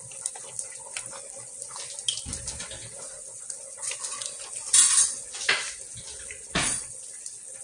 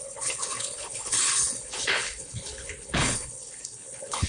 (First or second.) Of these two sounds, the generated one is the second